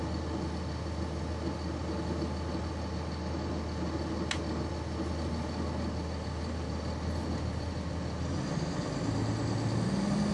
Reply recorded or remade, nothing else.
recorded